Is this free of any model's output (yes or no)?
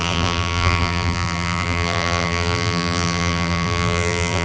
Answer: no